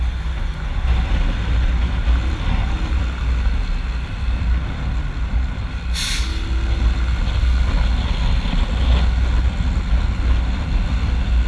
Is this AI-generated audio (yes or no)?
no